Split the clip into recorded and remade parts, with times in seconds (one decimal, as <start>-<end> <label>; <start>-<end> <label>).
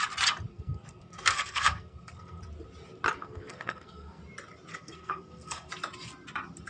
0.0-0.5 recorded; 0.5-2.4 remade; 2.4-3.2 recorded; 3.2-4.2 remade; 4.2-4.7 recorded; 4.7-5.7 remade; 5.7-6.7 recorded